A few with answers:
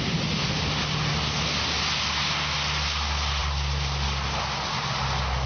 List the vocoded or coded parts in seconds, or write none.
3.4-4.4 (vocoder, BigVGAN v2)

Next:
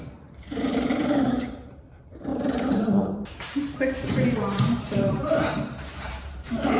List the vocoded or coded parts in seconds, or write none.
0.0-6.8 (vocoder, BigVGAN v2)

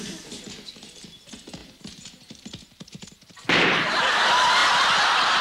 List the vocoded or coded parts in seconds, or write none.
1.6-3.9 (vocoder, BigVGAN v2)

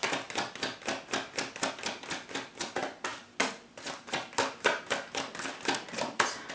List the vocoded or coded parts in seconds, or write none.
none

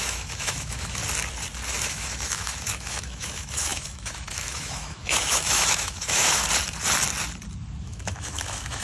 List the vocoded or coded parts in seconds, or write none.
0.0-1.0 (autoencoder, DAC-VAE); 1.8-6.4; 7.8-8.8

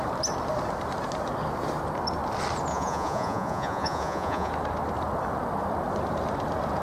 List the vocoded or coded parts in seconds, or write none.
2.7-4.5 (vocoder, Vocos)

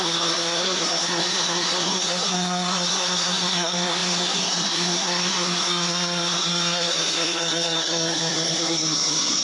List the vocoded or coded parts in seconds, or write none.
0.0-9.4 (codec, SNAC)